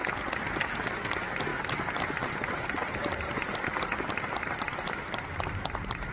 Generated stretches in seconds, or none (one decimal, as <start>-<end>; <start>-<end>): 1.5-3.4